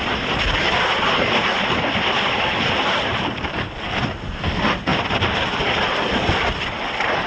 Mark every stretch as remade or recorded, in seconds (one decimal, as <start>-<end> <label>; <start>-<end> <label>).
0.0-1.4 recorded; 1.4-3.7 remade; 3.7-4.9 recorded; 4.9-7.3 remade